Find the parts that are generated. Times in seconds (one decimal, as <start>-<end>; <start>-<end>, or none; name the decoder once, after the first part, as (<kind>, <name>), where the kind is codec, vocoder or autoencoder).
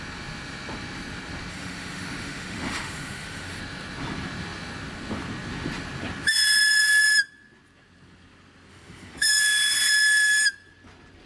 1.5-3.6 (autoencoder, DAC-VAE); 8.7-9.4